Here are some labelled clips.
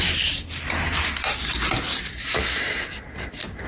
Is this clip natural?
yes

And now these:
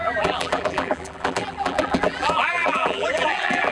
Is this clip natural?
no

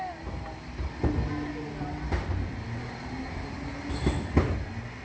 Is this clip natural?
yes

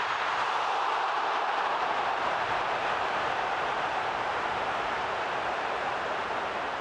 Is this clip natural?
no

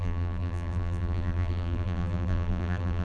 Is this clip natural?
no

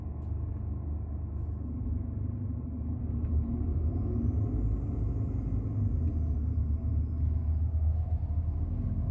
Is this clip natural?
yes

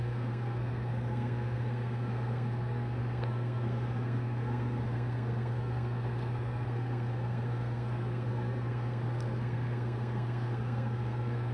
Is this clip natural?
no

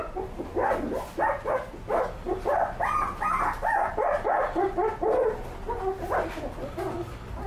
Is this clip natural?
yes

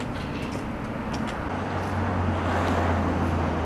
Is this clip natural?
yes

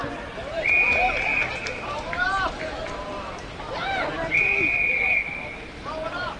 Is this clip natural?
no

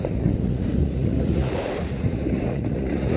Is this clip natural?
no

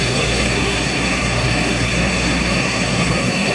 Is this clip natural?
no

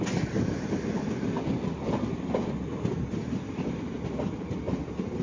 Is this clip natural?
yes